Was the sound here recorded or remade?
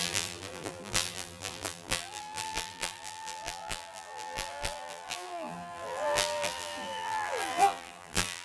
remade